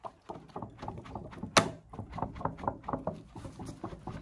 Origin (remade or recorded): recorded